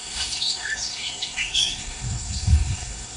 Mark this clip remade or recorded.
remade